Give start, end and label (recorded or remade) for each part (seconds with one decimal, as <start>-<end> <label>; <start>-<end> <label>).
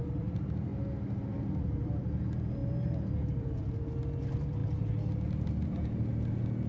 0.0-0.7 remade; 0.7-1.2 recorded; 1.2-2.6 remade; 2.6-3.3 recorded; 3.3-4.6 remade; 4.6-6.7 recorded